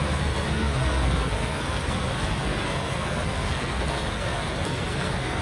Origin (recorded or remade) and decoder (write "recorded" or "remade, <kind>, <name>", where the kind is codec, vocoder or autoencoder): remade, codec, SNAC